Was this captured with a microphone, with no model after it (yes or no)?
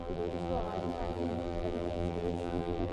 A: no